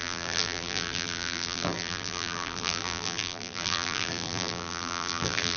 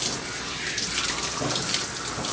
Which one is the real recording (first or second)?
second